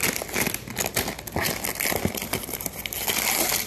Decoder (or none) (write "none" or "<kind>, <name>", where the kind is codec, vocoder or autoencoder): none